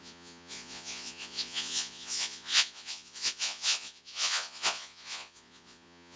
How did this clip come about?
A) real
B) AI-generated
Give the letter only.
B